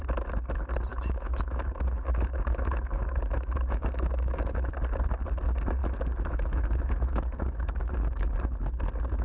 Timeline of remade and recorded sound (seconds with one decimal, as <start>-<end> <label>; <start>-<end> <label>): 0.0-0.9 recorded; 0.9-4.7 remade; 4.7-5.8 recorded; 5.8-8.3 remade; 8.3-9.2 recorded